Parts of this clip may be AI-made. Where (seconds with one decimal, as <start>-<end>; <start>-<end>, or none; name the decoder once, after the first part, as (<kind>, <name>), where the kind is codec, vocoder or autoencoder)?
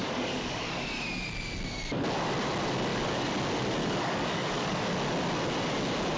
0.0-0.8 (codec, DAC); 2.9-3.4; 3.8-4.8